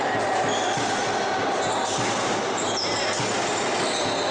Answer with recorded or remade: recorded